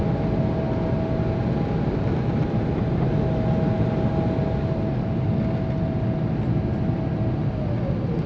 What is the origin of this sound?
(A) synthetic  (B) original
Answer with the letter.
B